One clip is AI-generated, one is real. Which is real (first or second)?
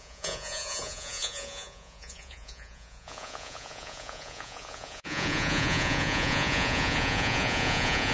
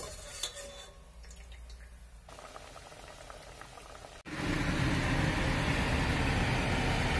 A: second